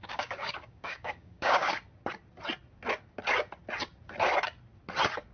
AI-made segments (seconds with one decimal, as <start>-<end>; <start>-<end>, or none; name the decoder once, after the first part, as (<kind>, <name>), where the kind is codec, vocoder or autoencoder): 0.0-1.7 (codec, DAC)